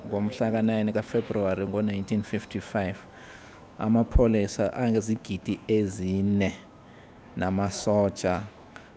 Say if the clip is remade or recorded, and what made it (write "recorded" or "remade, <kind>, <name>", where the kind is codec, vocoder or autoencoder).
remade, autoencoder, DAC-VAE